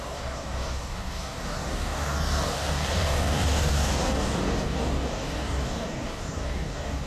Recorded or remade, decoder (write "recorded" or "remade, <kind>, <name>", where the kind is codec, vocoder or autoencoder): remade, codec, DAC